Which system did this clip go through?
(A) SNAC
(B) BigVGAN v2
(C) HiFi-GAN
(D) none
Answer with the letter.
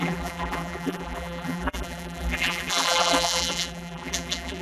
B